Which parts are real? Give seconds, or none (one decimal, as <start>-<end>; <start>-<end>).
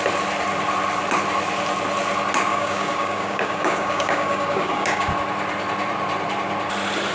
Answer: 0.0-2.5; 5.1-7.1